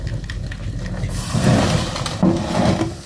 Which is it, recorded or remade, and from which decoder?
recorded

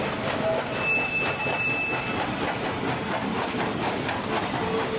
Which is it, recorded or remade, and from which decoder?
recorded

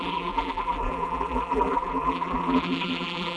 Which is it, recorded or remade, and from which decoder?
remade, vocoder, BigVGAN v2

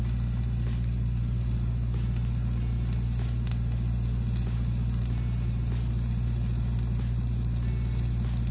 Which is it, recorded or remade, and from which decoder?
recorded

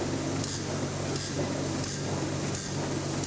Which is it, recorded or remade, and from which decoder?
recorded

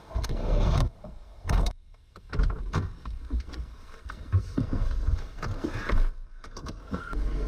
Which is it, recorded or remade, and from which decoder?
remade, codec, SNAC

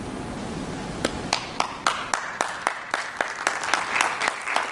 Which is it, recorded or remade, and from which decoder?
recorded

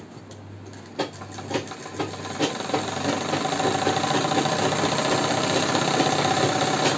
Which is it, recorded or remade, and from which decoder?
recorded